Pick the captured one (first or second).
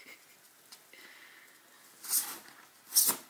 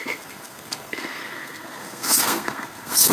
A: first